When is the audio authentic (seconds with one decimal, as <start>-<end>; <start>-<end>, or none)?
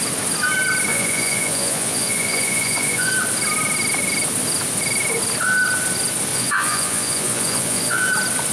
0.0-0.9; 3.1-6.3; 8.1-8.5